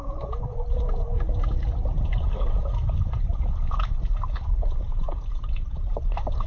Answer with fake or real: fake